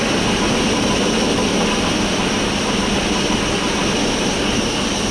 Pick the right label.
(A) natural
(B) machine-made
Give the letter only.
A